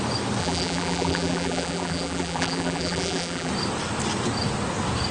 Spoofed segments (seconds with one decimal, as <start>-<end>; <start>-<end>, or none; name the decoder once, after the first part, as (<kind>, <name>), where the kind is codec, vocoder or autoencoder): 0.4-3.5 (vocoder, BigVGAN v2)